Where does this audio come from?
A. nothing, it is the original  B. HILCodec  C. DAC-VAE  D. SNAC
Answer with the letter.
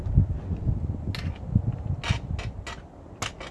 A